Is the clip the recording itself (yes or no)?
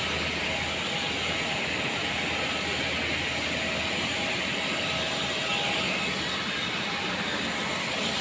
yes